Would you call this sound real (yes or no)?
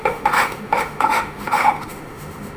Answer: no